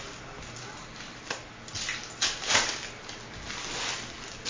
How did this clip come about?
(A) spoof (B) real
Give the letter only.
B